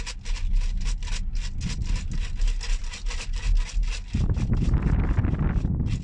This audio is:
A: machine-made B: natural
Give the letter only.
B